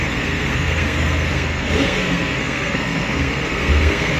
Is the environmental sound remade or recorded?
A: remade